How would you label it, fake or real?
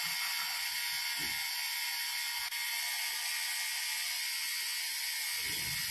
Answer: real